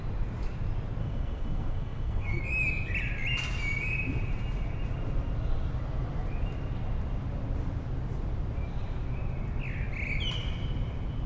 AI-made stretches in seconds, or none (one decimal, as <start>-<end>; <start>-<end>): 1.0-2.4